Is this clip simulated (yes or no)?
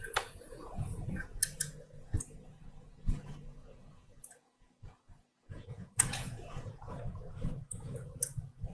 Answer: yes